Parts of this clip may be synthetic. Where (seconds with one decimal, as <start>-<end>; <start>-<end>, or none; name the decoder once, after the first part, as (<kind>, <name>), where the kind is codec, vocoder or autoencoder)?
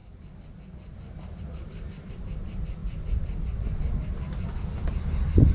1.4-2.8 (vocoder, BigVGAN v2)